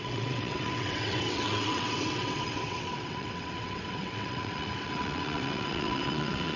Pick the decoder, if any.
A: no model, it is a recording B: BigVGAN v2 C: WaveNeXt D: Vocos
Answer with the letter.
C